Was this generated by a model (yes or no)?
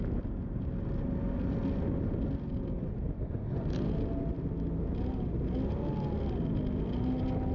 no